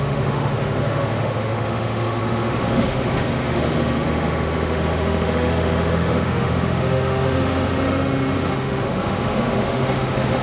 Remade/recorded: remade